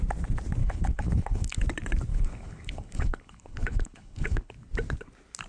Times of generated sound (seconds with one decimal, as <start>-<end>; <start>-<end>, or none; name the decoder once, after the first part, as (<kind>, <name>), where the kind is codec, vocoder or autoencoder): 0.6-1.6 (codec, HILCodec); 2.1-4.5